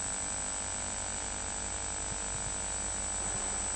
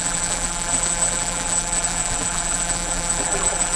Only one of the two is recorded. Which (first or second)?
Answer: first